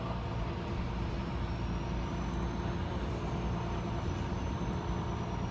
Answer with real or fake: real